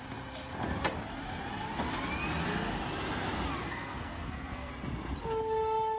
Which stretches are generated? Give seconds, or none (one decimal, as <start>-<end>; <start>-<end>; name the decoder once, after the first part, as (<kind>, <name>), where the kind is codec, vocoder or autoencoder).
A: 3.6-4.7 (codec, SNAC)